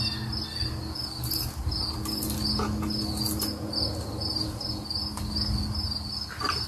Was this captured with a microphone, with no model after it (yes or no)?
yes